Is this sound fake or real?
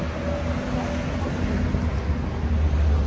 real